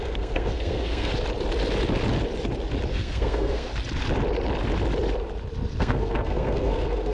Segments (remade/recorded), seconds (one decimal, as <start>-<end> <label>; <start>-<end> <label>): 0.0-1.1 remade; 1.1-2.9 recorded; 2.9-3.7 remade; 3.7-5.8 recorded; 5.8-7.1 remade